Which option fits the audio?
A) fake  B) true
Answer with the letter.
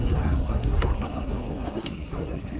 A